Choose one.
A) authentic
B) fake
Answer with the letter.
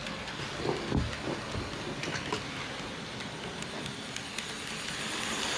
A